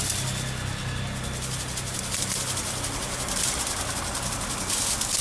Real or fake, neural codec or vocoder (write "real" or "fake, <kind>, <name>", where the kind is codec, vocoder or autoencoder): real